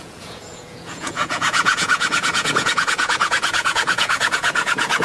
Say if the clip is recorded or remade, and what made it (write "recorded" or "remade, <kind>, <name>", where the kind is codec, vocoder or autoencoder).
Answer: remade, vocoder, Vocos